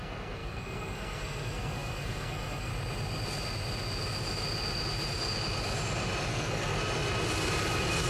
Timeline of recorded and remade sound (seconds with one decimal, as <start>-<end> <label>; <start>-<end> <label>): 0.0-2.7 remade; 2.7-6.3 recorded; 6.3-6.8 remade; 6.8-8.1 recorded